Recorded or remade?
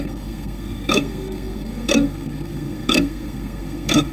remade